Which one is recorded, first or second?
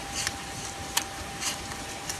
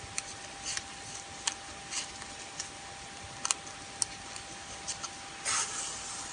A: second